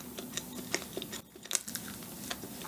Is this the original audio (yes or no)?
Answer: yes